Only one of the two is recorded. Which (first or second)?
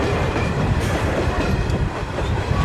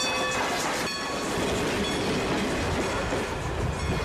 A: second